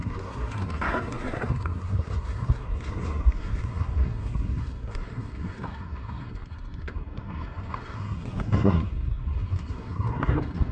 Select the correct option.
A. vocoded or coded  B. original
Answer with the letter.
A